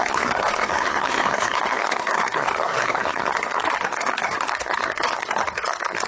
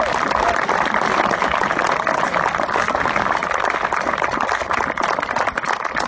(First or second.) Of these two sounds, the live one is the second